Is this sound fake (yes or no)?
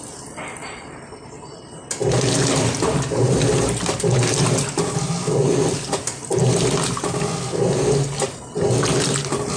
no